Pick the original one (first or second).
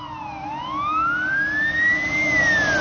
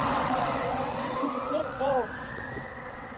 first